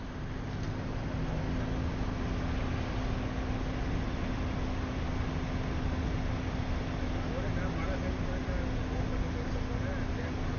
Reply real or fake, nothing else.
real